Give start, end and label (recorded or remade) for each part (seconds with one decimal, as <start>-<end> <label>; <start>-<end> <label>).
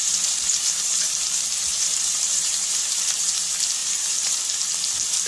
0.0-3.1 remade; 3.1-3.8 recorded; 3.8-4.4 remade; 4.4-5.3 recorded